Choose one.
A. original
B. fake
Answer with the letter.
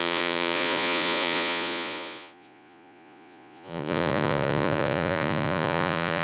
B